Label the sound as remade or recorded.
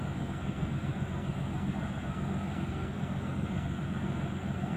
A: remade